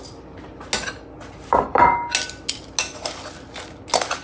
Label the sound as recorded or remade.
recorded